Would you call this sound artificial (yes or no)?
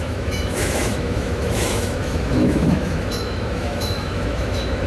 yes